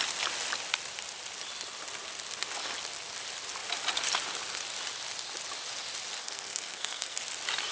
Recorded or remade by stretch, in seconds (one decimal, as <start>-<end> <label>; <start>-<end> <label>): 0.0-6.2 recorded; 6.2-7.2 remade; 7.2-7.7 recorded